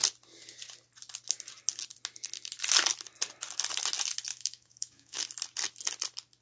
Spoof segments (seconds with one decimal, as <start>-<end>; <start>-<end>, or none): 4.3-5.2